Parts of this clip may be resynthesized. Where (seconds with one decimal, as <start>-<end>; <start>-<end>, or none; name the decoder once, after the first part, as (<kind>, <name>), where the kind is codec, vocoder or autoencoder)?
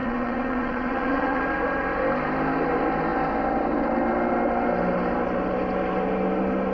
0.0-1.4 (vocoder, WaveNeXt)